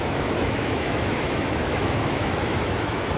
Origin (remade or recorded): remade